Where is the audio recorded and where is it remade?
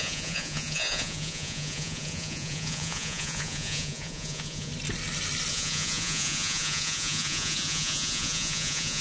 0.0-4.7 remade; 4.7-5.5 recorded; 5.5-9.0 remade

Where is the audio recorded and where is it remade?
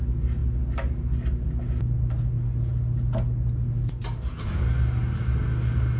0.0-6.0 recorded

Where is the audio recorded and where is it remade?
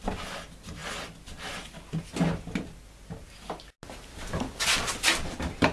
0.0-5.7 recorded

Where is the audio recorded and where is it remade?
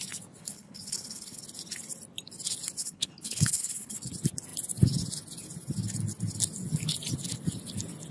0.0-0.4 recorded; 0.4-1.4 remade; 1.4-2.8 recorded; 2.8-4.1 remade; 4.1-8.1 recorded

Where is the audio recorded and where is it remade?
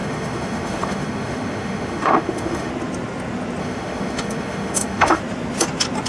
0.0-2.7 remade; 2.7-3.6 recorded; 3.6-5.2 remade; 5.2-6.1 recorded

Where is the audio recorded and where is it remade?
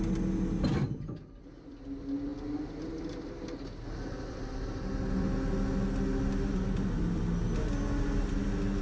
0.0-8.8 recorded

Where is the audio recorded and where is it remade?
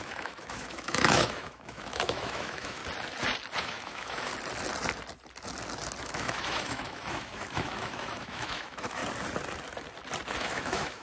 0.0-2.8 remade; 2.8-3.6 recorded; 3.6-4.3 remade; 4.3-6.0 recorded; 6.0-9.0 remade; 9.0-10.4 recorded; 10.4-11.0 remade